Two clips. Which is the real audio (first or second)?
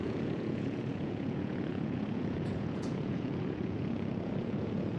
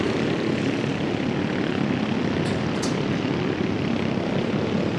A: second